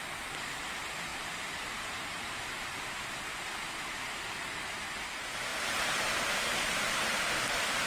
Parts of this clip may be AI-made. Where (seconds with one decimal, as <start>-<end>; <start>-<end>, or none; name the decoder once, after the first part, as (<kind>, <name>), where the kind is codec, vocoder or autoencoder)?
1.1-3.0 (vocoder, BigVGAN v2)